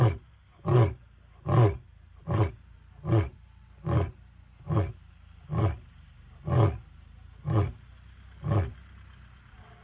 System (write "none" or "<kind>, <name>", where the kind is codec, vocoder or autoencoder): none